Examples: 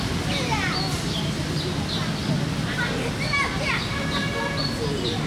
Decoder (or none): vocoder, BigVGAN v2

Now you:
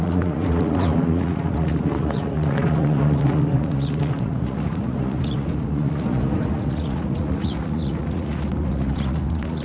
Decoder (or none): vocoder, Vocos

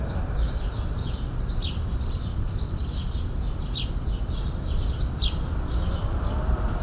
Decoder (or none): vocoder, BigVGAN v2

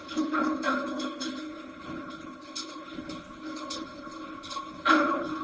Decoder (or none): codec, HILCodec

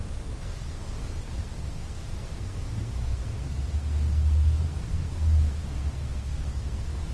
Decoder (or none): codec, SNAC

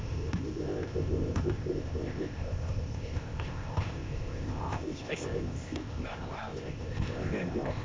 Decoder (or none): codec, ZipCodec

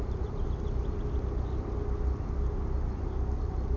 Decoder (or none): none